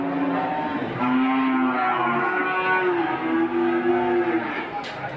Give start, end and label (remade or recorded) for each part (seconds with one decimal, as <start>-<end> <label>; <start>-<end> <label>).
0.0-5.2 recorded